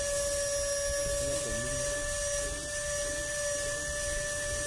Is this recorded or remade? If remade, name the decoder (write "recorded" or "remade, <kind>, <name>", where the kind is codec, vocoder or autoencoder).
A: recorded